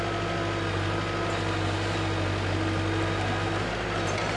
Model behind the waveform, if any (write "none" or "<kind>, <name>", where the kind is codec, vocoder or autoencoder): none